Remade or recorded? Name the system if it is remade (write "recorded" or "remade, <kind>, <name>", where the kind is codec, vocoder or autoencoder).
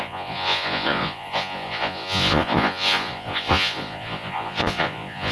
remade, vocoder, Vocos